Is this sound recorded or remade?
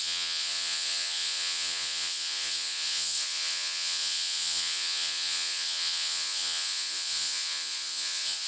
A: remade